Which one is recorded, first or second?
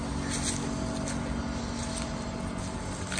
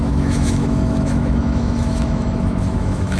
first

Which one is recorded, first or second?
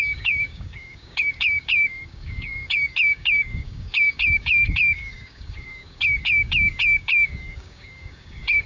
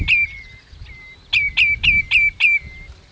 second